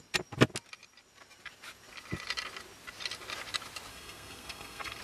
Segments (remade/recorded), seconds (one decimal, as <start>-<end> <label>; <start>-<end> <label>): 0.0-3.9 recorded; 3.9-5.0 remade